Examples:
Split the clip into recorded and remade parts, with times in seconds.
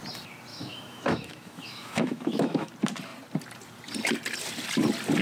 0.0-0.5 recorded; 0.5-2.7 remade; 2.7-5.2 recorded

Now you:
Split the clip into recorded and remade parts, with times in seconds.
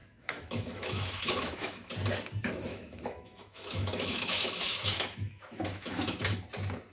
0.0-1.9 remade; 1.9-2.7 recorded; 2.7-6.2 remade; 6.2-6.9 recorded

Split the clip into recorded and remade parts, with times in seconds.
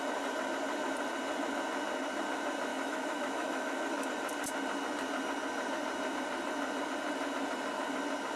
0.0-2.7 recorded; 2.7-4.1 remade; 4.1-8.4 recorded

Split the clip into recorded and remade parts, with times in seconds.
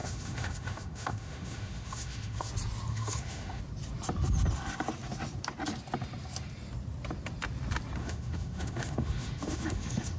0.0-2.5 remade; 2.5-2.9 recorded; 2.9-3.6 remade; 3.6-8.0 recorded; 8.0-10.2 remade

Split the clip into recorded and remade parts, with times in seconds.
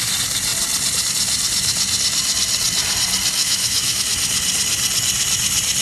0.0-3.4 recorded; 3.4-4.0 remade; 4.0-5.8 recorded